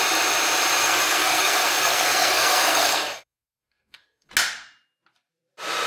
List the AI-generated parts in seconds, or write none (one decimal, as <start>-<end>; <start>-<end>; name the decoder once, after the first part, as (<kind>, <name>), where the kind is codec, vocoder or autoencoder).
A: 0.8-4.3 (codec, SNAC)